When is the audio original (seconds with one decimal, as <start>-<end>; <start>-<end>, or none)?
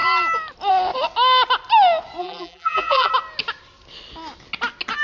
0.0-2.2; 3.1-5.0